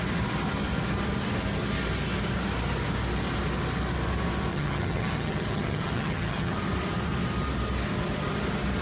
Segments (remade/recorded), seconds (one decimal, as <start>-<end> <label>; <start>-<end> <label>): 0.0-4.5 recorded; 4.5-6.6 remade; 6.6-8.8 recorded